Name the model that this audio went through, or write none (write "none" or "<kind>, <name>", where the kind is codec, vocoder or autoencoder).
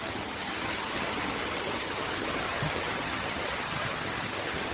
vocoder, HiFi-GAN